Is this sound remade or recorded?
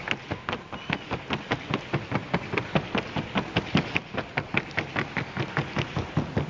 recorded